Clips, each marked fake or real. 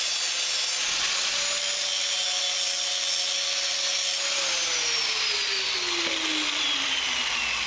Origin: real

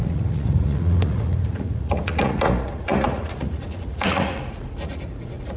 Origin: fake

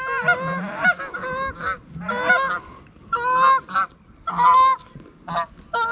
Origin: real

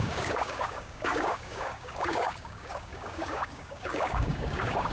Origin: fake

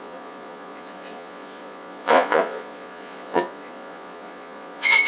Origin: fake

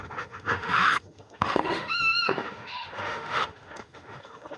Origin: fake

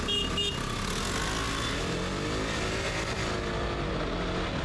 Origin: real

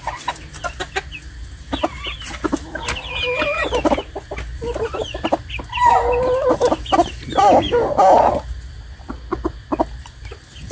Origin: real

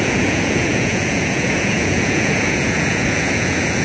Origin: fake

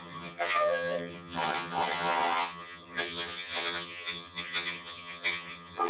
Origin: fake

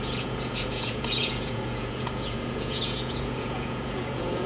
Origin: fake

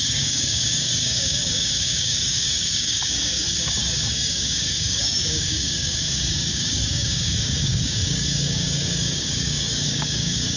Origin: fake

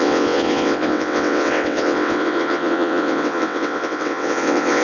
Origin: fake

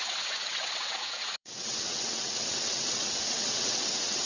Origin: fake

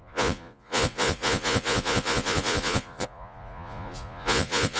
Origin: fake